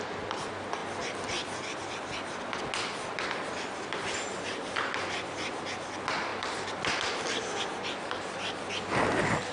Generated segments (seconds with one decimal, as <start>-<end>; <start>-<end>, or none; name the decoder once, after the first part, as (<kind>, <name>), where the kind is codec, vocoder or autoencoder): none